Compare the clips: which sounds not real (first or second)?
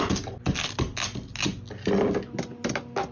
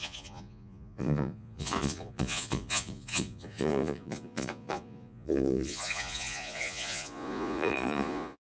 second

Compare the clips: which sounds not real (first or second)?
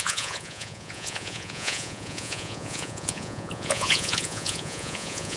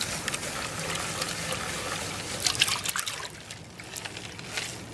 first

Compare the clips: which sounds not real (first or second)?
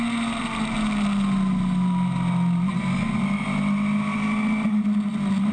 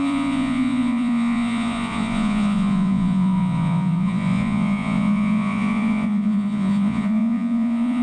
second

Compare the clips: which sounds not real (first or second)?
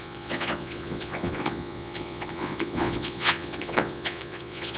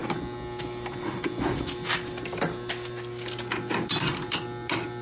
first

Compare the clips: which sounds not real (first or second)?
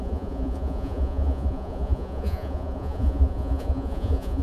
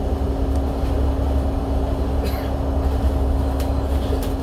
first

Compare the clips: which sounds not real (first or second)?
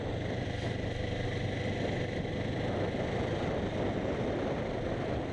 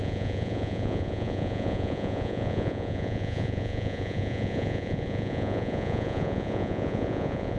second